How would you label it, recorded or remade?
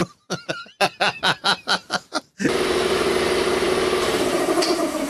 remade